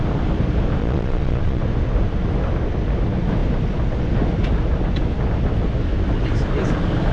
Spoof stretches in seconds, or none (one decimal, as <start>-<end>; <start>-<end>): 0.8-1.6